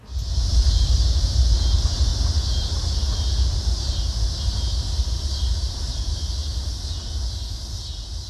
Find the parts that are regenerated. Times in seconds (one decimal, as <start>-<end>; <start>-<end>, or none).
0.5-1.4